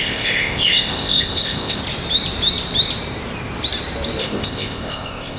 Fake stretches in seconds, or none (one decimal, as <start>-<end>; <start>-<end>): 0.0-1.8; 4.2-5.4